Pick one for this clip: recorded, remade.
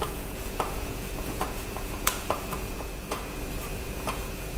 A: remade